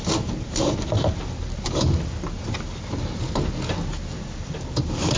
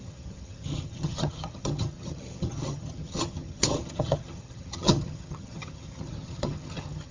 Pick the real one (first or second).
first